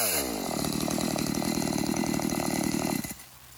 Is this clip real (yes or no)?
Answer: yes